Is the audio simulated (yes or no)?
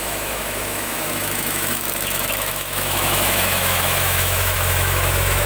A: yes